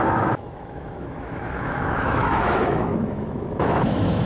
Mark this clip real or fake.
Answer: fake